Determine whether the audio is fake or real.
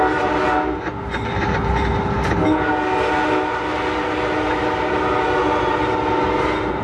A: real